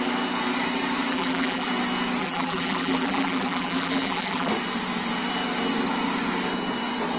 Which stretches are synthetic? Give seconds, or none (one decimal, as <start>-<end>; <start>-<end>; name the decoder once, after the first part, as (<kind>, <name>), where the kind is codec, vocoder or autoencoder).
1.1-1.7 (vocoder, BigVGAN v2); 2.2-4.5